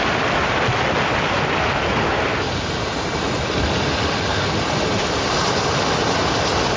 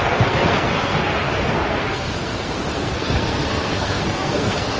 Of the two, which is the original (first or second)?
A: first